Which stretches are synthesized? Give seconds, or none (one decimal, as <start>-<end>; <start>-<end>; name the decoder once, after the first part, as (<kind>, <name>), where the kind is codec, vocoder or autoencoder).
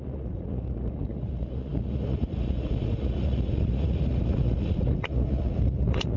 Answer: 0.0-6.2 (vocoder, Vocos)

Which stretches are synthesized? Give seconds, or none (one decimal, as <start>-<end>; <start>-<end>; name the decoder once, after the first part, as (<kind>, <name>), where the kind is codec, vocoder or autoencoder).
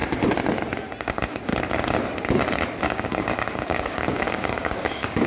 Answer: 1.0-1.5 (codec, DAC); 2.8-5.3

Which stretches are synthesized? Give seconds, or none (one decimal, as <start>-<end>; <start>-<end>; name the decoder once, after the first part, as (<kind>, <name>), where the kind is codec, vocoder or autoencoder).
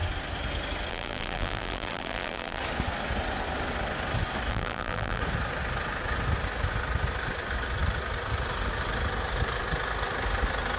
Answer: 0.9-2.6 (vocoder, BigVGAN v2); 4.5-5.2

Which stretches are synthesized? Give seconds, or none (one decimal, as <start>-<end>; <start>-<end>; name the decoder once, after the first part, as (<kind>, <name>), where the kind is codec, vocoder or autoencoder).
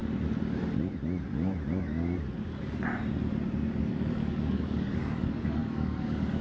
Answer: 3.8-6.4 (codec, DAC)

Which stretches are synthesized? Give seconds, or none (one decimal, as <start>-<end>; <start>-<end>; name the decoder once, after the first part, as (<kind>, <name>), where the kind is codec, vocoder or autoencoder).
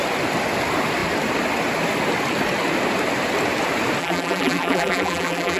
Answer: 4.0-5.6 (vocoder, BigVGAN v2)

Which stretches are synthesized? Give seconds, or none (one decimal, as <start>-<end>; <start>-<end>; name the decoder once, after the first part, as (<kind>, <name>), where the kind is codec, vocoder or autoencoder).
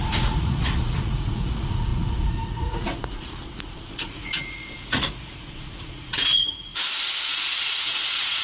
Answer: 0.0-6.7 (vocoder, Vocos); 7.2-8.4